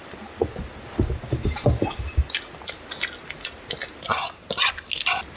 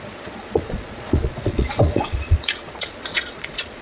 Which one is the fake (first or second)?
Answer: second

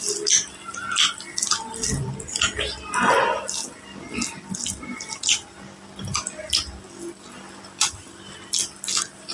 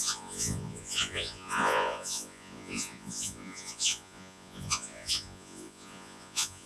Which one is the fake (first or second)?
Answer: second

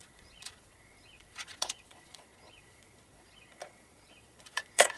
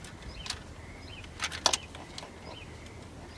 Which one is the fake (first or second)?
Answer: first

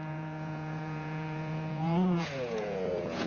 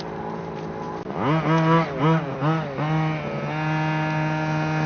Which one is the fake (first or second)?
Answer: first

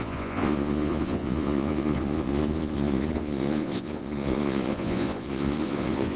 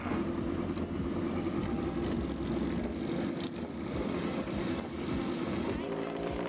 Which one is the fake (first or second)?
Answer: first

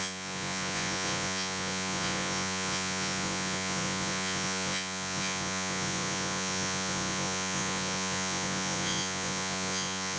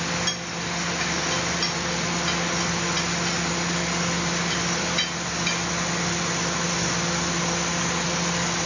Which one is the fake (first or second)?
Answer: first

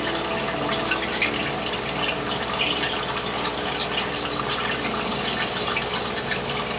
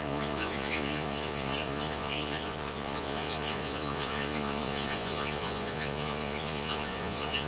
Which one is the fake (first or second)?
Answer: second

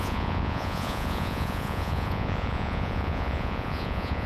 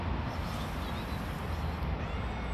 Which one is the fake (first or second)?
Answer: first